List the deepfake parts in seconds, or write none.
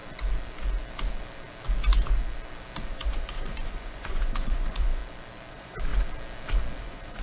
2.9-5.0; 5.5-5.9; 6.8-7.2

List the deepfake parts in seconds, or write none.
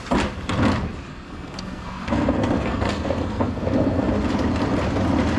1.1-4.1